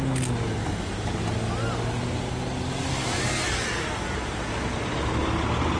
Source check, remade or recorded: recorded